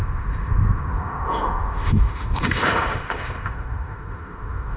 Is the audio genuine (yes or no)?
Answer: no